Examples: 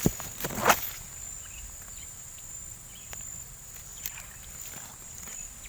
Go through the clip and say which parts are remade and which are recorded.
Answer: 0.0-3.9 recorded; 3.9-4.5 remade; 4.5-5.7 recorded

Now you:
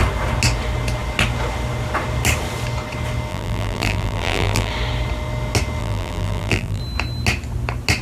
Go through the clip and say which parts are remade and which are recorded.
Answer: 0.0-3.3 recorded; 3.3-4.7 remade; 4.7-5.8 recorded; 5.8-6.8 remade; 6.8-8.0 recorded

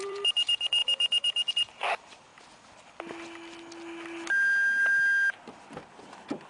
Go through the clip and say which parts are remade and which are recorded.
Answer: 0.0-2.3 remade; 2.3-6.5 recorded

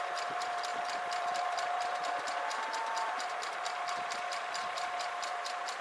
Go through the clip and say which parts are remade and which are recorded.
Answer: 0.0-5.8 remade

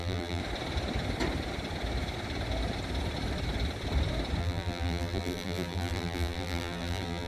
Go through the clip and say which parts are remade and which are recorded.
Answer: 0.0-0.4 remade; 0.4-4.4 recorded; 4.4-7.3 remade

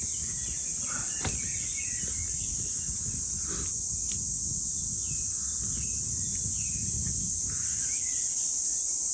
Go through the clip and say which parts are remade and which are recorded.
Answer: 0.0-0.4 recorded; 0.4-1.9 remade; 1.9-6.3 recorded; 6.3-7.8 remade; 7.8-9.1 recorded